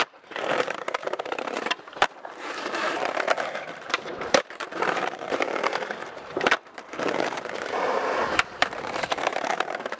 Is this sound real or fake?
fake